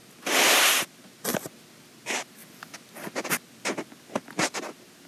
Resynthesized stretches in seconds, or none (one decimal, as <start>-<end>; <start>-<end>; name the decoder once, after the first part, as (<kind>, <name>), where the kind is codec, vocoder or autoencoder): none